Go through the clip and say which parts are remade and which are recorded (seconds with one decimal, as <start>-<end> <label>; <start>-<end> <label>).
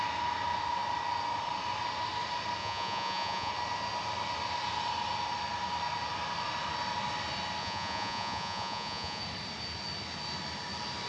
0.0-2.6 recorded; 2.6-3.5 remade; 3.5-7.6 recorded; 7.6-9.2 remade; 9.2-11.1 recorded